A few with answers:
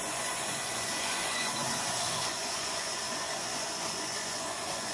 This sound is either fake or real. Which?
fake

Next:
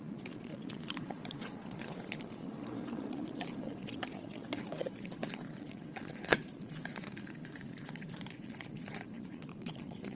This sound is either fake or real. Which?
fake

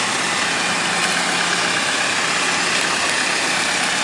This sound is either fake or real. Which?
real